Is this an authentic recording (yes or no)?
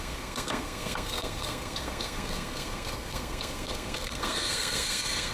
no